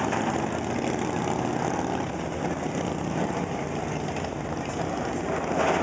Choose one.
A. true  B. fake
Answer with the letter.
A